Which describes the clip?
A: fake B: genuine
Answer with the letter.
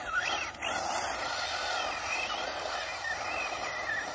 B